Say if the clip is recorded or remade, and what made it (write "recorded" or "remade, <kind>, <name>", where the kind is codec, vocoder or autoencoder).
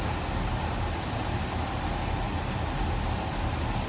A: recorded